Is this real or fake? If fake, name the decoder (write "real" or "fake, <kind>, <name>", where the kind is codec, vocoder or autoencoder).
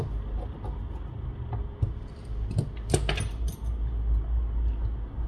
real